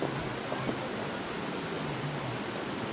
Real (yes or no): yes